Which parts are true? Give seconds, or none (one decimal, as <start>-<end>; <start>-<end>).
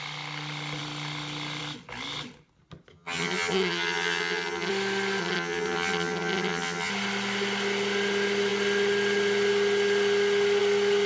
0.0-2.9; 4.7-5.2; 6.9-11.1